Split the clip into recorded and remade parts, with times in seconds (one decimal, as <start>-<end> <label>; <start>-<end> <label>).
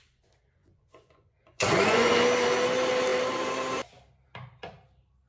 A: 0.0-0.6 recorded; 0.6-2.1 remade; 2.1-5.3 recorded